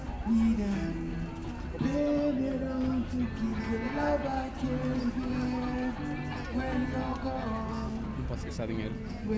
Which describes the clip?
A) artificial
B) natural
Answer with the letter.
B